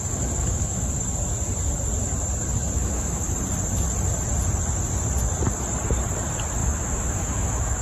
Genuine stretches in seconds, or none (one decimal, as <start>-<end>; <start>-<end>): 0.0-0.4; 0.9-2.8; 3.3-6.6